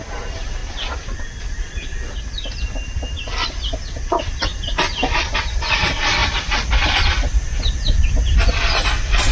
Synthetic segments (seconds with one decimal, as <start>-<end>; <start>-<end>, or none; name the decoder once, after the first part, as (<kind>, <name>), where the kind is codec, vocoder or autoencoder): 0.0-0.6 (vocoder, BigVGAN v2); 1.4-9.3